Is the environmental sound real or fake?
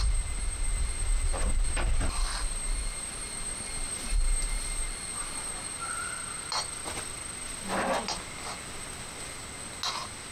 real